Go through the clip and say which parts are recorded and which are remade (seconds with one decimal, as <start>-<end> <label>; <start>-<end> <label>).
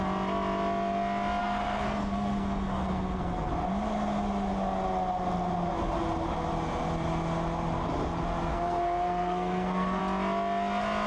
0.0-1.4 recorded; 1.4-3.5 remade; 3.5-8.5 recorded; 8.5-10.0 remade; 10.0-11.1 recorded